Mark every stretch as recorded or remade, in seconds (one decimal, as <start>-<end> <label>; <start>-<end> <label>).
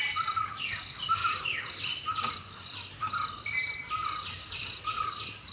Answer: 0.0-5.5 recorded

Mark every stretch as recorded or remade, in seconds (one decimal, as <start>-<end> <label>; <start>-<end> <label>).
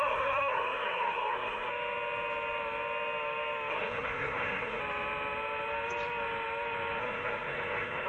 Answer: 0.0-1.7 remade; 1.7-3.7 recorded; 3.7-4.8 remade; 4.8-7.0 recorded; 7.0-8.1 remade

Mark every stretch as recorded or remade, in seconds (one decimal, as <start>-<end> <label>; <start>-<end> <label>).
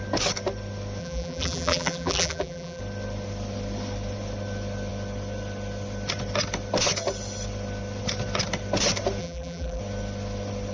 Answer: 0.0-1.0 recorded; 1.0-2.8 remade; 2.8-9.2 recorded; 9.2-9.8 remade; 9.8-10.7 recorded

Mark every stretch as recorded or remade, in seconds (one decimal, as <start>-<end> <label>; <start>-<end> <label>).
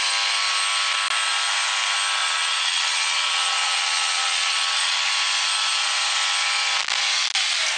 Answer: 0.0-2.2 recorded; 2.2-5.1 remade; 5.1-7.8 recorded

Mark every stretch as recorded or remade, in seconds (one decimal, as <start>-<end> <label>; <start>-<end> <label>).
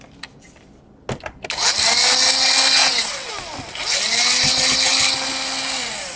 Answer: 0.0-2.8 recorded; 2.8-3.3 remade; 3.3-6.2 recorded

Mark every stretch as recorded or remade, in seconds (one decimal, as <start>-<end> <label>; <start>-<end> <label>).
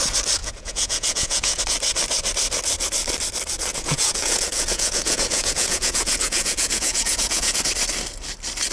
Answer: 0.0-0.4 recorded; 0.4-1.6 remade; 1.6-3.7 recorded; 3.7-7.6 remade; 7.6-8.7 recorded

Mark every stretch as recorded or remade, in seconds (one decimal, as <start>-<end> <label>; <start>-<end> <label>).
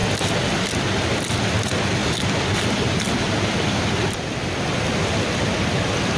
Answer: 0.0-2.0 recorded; 2.0-2.8 remade; 2.8-6.2 recorded